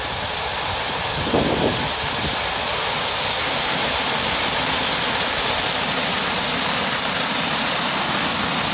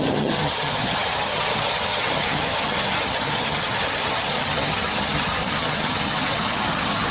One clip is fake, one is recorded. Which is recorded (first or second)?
first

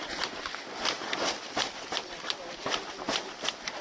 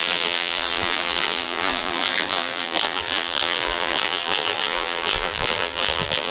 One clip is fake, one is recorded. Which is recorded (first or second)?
first